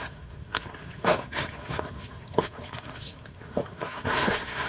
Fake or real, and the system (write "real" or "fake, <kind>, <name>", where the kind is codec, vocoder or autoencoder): fake, codec, SNAC